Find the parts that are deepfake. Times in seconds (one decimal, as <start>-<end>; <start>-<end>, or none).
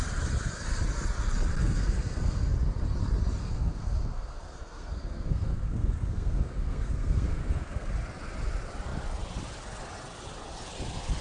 1.6-2.5; 3.4-7.9